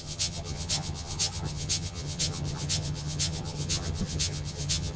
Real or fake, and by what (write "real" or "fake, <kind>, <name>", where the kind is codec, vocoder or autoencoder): fake, vocoder, HiFi-GAN